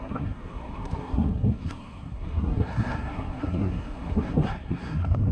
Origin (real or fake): fake